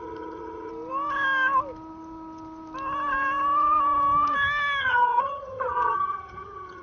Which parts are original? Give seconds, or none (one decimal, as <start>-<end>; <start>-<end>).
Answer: 0.7-4.8